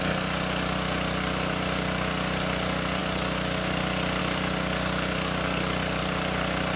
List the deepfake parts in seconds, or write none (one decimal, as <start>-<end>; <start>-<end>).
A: none